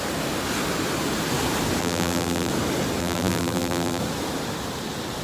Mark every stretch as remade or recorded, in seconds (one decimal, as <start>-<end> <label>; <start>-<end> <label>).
0.0-1.8 recorded; 1.8-2.5 remade; 2.5-3.0 recorded; 3.0-4.0 remade; 4.0-5.2 recorded